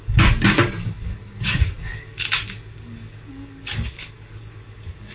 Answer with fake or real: fake